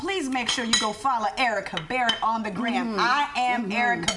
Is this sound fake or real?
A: real